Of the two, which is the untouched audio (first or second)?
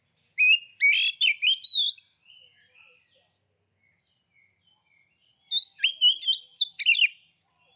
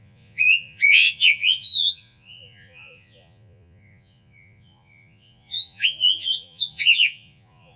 first